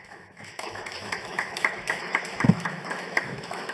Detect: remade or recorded remade